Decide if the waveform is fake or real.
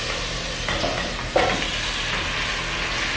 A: real